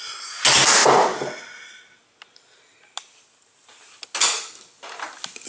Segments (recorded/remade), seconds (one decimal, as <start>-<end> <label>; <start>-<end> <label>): 0.0-5.5 recorded